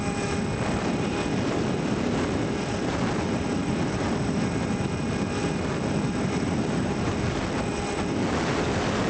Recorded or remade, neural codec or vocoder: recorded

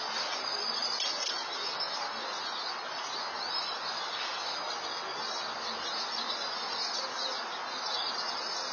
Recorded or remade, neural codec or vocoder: recorded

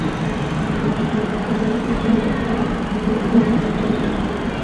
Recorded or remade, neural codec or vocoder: recorded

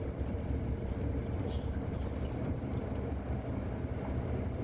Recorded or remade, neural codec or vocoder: recorded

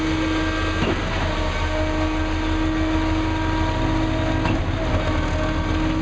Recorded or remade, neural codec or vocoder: recorded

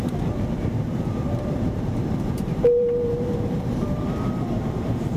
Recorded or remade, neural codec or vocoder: remade, vocoder, BigVGAN v2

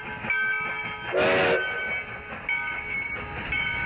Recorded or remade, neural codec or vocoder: recorded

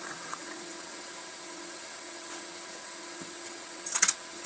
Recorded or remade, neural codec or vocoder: remade, vocoder, WaveNeXt